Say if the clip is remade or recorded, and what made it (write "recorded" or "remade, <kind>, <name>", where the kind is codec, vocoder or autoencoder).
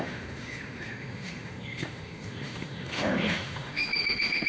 remade, autoencoder, DAC-VAE